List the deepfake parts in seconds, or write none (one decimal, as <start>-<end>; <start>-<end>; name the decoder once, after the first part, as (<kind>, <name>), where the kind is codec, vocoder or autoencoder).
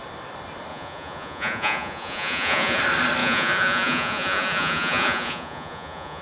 0.7-2.8 (vocoder, Vocos); 3.2-6.2